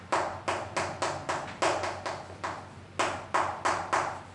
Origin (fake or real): real